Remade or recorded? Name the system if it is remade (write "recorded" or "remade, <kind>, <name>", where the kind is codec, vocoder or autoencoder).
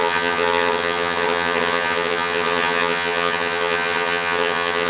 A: remade, vocoder, HiFi-GAN